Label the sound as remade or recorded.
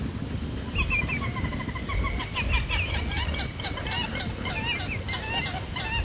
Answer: recorded